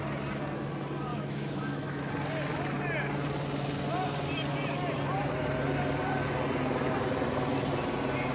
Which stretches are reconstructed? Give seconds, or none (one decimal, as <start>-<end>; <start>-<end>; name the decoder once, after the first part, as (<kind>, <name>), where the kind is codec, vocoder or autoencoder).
1.1-2.1 (autoencoder, DAC-VAE)